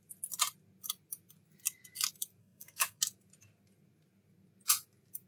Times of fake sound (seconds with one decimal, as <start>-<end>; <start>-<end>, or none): 2.4-3.0